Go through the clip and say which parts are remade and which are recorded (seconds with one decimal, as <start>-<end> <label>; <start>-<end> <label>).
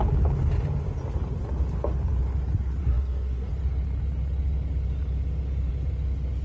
0.0-2.8 recorded; 2.8-3.5 remade; 3.5-6.4 recorded